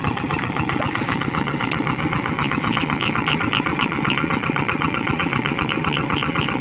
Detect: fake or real fake